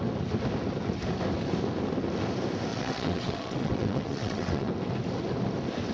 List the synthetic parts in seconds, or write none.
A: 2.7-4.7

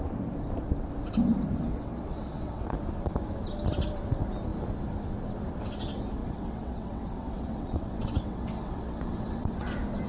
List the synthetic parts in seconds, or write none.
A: 1.6-2.8; 6.2-9.7

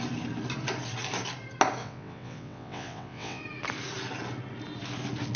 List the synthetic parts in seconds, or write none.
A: 1.8-3.4